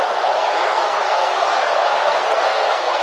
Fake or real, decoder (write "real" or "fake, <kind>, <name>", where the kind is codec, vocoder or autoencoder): fake, codec, SNAC